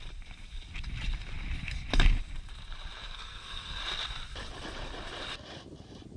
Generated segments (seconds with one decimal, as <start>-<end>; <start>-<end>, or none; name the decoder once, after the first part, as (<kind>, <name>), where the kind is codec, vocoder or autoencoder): 3.0-3.8 (codec, SNAC)